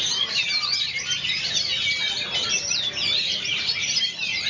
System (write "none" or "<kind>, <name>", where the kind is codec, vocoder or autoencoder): none